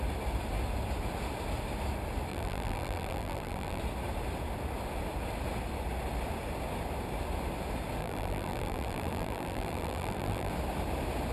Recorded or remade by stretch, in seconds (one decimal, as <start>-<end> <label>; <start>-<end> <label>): 0.0-2.3 recorded; 2.3-3.8 remade; 3.8-8.0 recorded; 8.0-10.5 remade; 10.5-11.3 recorded